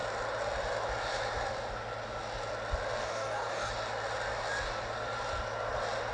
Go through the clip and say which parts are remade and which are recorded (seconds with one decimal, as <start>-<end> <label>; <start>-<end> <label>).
0.0-3.0 recorded; 3.0-3.7 remade; 3.7-6.1 recorded